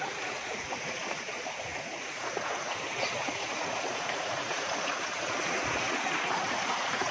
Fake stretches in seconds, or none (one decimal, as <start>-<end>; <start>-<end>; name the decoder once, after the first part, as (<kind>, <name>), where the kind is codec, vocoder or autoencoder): 0.0-7.1 (vocoder, Vocos)